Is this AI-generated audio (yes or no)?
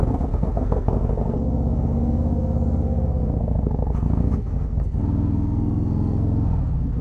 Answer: yes